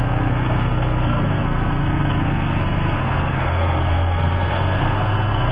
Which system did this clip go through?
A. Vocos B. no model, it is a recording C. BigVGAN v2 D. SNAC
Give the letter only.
D